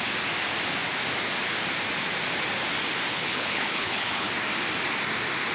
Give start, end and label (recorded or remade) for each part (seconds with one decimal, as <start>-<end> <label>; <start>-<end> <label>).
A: 0.0-3.1 recorded; 3.1-4.3 remade; 4.3-5.5 recorded